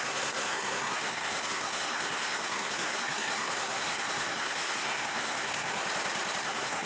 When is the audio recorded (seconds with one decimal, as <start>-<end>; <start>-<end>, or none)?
5.8-6.4